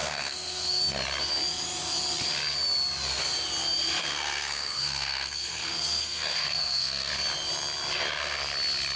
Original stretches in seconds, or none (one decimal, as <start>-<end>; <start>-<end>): 0.8-4.0; 7.1-9.0